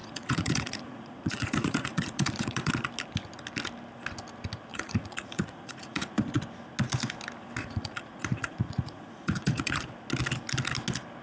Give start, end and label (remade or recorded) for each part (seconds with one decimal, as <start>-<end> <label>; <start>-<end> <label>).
0.0-2.7 remade; 2.7-4.7 recorded; 4.7-6.4 remade; 6.4-7.6 recorded; 7.6-9.9 remade; 9.9-11.2 recorded